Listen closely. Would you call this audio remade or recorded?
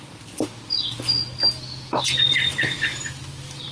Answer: recorded